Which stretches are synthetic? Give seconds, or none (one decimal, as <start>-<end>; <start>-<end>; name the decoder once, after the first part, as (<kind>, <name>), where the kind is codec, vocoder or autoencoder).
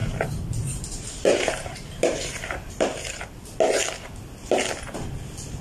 0.0-3.2 (vocoder, BigVGAN v2)